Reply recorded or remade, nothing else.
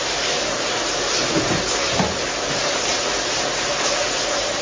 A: recorded